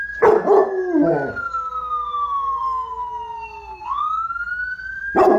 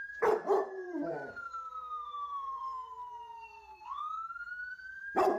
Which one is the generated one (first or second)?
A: second